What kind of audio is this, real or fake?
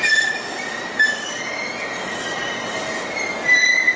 real